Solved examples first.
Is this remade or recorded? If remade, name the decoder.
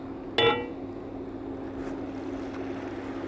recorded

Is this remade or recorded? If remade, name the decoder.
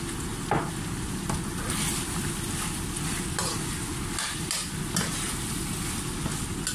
recorded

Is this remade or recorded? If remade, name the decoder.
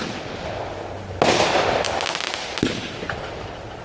recorded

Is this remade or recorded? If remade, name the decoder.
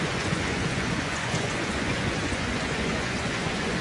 remade, vocoder, Vocos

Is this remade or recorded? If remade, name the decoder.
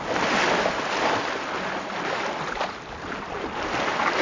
recorded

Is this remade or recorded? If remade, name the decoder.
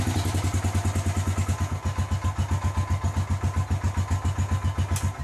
recorded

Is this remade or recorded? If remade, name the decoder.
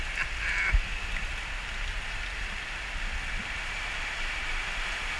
recorded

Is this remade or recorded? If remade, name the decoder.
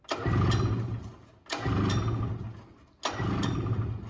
recorded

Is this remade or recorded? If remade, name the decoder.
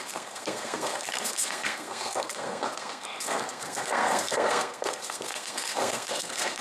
remade, codec, SNAC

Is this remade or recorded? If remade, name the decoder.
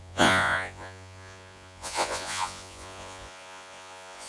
remade, vocoder, Vocos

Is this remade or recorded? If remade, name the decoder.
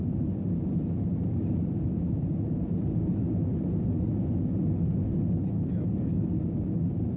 recorded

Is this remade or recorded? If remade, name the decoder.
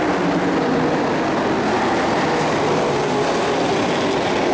recorded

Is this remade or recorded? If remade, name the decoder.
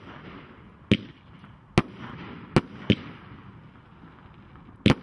recorded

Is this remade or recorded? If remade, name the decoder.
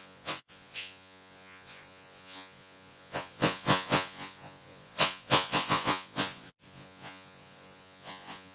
remade, vocoder, Vocos